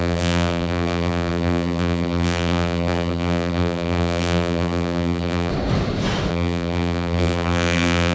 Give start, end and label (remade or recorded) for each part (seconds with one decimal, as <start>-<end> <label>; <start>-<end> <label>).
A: 0.0-5.5 remade; 5.5-6.3 recorded; 6.3-8.1 remade